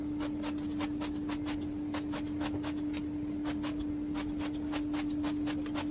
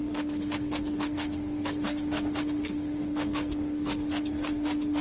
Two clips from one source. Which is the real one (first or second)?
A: first